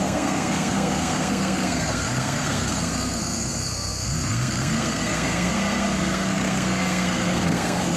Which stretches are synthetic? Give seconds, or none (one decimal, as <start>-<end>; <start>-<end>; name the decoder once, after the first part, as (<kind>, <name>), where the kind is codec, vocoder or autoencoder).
0.0-8.0 (codec, SNAC)

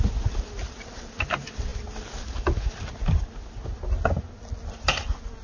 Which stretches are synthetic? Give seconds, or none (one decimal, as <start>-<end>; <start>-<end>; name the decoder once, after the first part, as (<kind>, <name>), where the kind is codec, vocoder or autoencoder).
none